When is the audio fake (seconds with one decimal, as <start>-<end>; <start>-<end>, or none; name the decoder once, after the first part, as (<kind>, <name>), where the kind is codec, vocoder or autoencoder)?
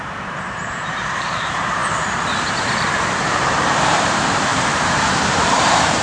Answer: 0.0-1.8 (vocoder, BigVGAN v2); 2.8-6.0